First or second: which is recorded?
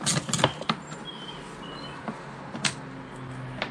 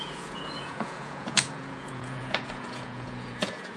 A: first